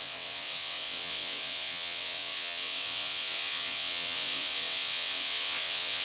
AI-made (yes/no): yes